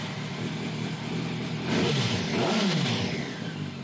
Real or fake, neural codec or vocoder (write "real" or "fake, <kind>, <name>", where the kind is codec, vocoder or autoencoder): real